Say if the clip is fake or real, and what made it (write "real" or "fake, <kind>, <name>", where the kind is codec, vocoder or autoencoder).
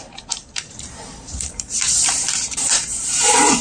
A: fake, vocoder, BigVGAN v2